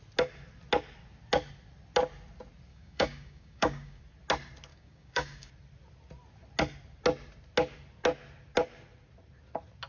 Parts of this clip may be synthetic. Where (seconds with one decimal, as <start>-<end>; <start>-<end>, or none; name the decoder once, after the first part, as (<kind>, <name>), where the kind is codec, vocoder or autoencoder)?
2.7-4.0 (codec, DAC); 4.7-5.5